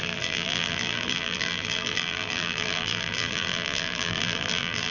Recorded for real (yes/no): no